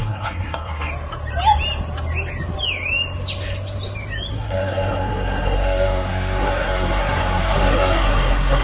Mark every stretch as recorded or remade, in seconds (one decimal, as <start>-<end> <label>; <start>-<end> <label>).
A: 0.0-0.9 remade; 0.9-4.3 recorded; 4.3-8.6 remade